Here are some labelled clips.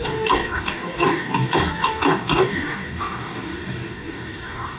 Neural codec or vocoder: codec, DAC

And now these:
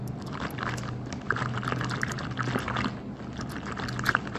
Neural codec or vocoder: none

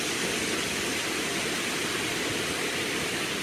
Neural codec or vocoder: none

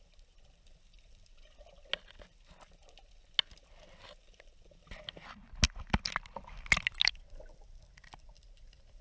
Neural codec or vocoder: none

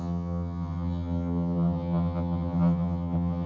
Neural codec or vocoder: vocoder, HiFi-GAN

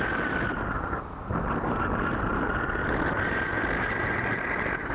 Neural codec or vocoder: none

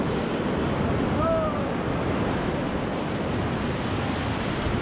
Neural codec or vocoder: none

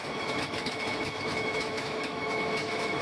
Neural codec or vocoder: autoencoder, DAC-VAE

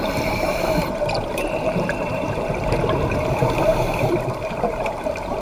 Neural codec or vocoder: vocoder, BigVGAN v2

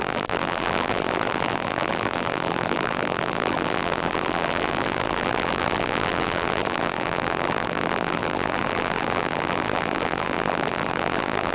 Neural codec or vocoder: vocoder, BigVGAN v2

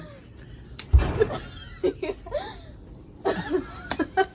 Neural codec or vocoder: none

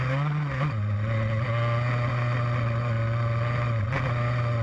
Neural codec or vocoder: none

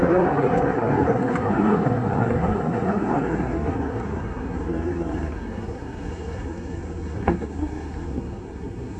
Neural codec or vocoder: codec, SNAC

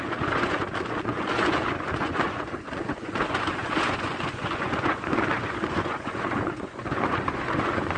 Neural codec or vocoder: vocoder, Vocos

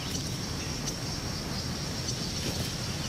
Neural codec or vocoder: none